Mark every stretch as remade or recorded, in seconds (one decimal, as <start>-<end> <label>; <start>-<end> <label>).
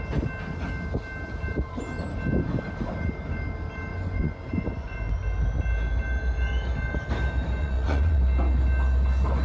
0.0-3.9 recorded; 3.9-5.1 remade; 5.1-7.6 recorded; 7.6-8.2 remade; 8.2-9.4 recorded